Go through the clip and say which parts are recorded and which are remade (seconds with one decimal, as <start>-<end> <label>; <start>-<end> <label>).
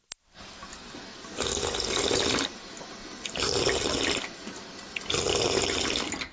0.0-3.0 recorded; 3.0-3.6 remade; 3.6-6.3 recorded